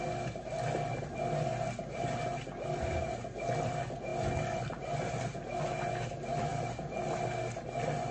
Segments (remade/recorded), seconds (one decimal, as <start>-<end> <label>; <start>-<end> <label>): 0.0-8.1 recorded